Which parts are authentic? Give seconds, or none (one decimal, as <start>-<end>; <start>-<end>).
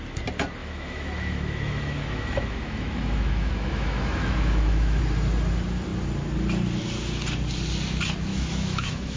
0.0-0.6; 5.0-8.3